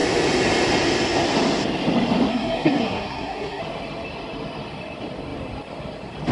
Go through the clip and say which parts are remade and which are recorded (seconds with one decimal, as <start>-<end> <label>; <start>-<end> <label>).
0.0-2.3 recorded; 2.3-3.6 remade; 3.6-6.3 recorded